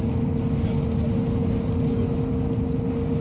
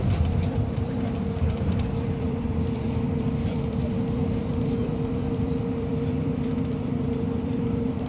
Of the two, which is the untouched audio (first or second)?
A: first